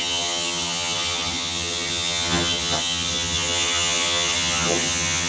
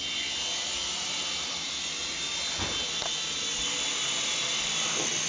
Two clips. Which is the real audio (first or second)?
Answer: second